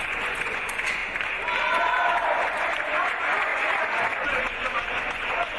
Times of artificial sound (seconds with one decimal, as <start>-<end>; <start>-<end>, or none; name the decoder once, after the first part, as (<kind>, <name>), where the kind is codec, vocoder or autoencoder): 0.0-1.0 (vocoder, Vocos); 1.7-5.6